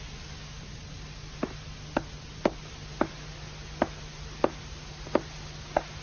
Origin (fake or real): real